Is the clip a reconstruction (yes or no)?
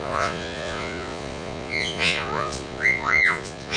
yes